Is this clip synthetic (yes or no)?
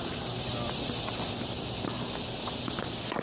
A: no